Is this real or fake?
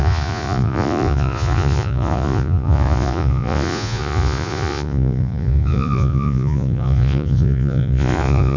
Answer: fake